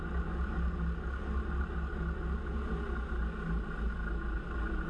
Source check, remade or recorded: recorded